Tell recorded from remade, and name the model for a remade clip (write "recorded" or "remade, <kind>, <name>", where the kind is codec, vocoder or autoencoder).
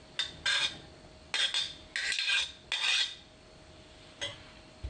recorded